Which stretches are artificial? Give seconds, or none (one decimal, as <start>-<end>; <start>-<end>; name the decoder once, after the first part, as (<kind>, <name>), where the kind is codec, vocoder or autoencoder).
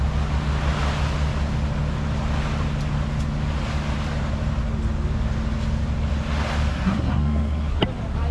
6.7-7.8 (codec, SNAC)